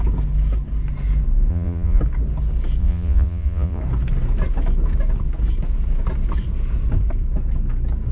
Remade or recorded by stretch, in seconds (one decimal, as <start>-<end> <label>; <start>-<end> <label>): 0.0-1.5 recorded; 1.5-2.0 remade; 2.0-2.8 recorded; 2.8-3.8 remade; 3.8-8.1 recorded